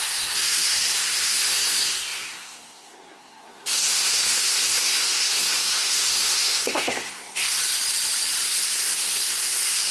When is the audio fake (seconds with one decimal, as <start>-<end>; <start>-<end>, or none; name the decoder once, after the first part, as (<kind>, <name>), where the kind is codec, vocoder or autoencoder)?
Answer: 0.0-7.6 (codec, SNAC); 8.5-9.9